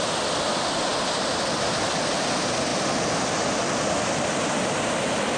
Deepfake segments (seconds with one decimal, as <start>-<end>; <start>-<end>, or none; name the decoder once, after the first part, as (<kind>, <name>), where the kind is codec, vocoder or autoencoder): 0.9-1.7 (vocoder, BigVGAN v2); 2.7-4.6